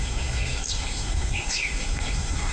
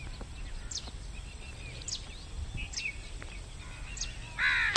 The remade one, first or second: first